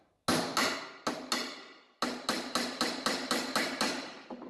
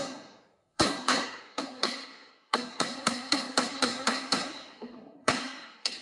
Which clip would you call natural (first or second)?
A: first